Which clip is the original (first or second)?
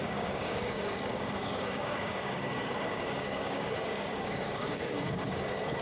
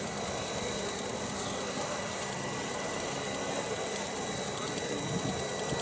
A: second